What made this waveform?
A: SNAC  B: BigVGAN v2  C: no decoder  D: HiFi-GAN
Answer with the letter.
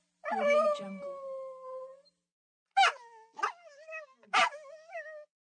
C